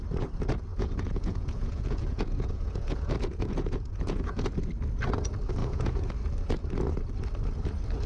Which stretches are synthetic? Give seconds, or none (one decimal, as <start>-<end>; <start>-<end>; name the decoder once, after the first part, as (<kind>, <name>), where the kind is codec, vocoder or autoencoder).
0.7-4.7 (vocoder, Vocos); 5.6-6.1